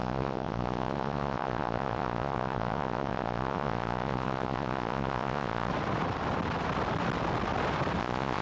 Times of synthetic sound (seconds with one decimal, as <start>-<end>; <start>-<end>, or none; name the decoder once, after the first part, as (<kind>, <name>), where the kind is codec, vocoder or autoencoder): 0.0-5.7 (vocoder, Vocos); 8.0-8.4